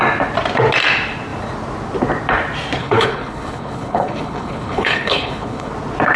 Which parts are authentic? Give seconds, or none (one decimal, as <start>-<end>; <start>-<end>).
0.0-2.8; 5.7-6.2